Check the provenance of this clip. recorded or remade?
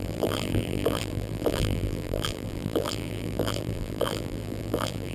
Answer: remade